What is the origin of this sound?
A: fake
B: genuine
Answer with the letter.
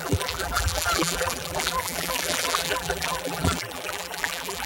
A